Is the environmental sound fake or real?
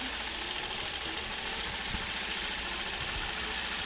real